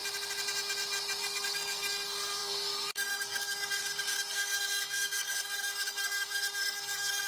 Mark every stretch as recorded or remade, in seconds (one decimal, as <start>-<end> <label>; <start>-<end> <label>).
0.0-1.2 recorded; 1.2-3.8 remade; 3.8-4.3 recorded; 4.3-7.3 remade